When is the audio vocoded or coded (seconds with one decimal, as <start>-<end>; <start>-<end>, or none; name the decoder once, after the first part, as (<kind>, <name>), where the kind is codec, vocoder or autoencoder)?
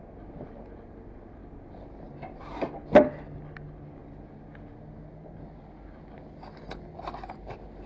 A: none